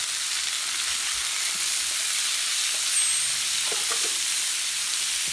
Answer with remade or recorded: recorded